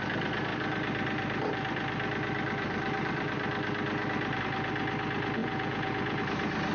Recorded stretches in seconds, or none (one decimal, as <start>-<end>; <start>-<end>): 0.0-5.4; 6.2-6.7